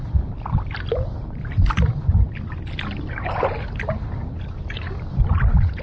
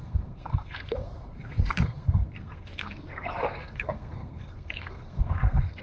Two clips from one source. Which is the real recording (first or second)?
first